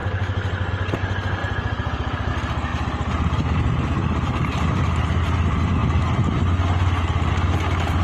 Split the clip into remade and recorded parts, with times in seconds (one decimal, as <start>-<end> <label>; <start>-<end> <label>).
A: 0.0-1.4 recorded; 1.4-2.3 remade; 2.3-8.0 recorded